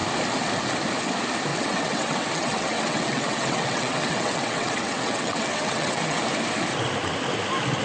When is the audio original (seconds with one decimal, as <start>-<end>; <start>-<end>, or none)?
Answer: 0.0-1.5; 6.2-7.8